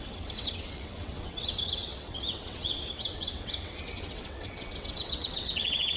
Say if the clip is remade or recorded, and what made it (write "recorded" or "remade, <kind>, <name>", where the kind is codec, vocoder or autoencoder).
remade, vocoder, WaveNeXt